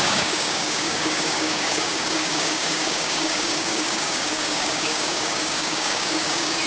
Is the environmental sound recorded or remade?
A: remade